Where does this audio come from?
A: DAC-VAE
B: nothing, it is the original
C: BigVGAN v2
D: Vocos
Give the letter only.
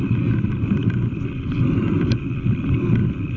C